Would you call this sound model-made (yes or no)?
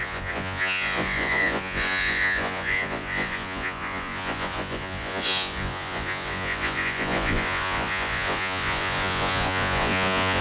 yes